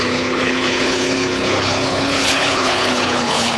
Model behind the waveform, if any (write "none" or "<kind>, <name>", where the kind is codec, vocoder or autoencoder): codec, HILCodec